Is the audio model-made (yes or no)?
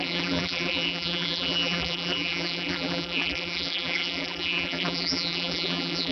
yes